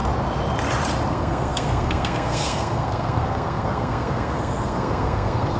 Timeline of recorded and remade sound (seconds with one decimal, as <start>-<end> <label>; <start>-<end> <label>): 0.0-1.1 recorded; 1.1-5.6 remade

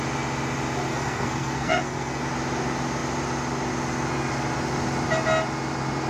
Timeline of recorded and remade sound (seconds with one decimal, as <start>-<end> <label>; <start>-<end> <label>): 0.0-0.9 recorded; 0.9-2.2 remade; 2.2-6.1 recorded

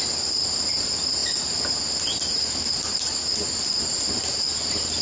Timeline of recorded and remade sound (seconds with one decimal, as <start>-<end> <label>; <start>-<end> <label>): 0.0-5.0 recorded

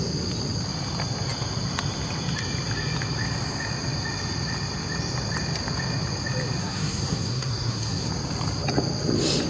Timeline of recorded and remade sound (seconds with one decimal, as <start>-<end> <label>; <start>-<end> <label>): 0.0-6.6 recorded; 6.6-8.1 remade; 8.1-9.5 recorded